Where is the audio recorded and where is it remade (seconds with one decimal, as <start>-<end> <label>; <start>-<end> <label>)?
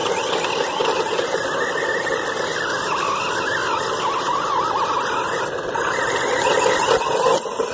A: 0.0-2.5 recorded; 2.5-3.4 remade; 3.4-7.7 recorded